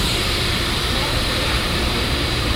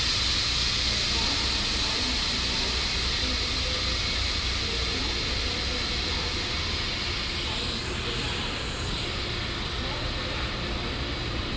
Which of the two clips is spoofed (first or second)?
first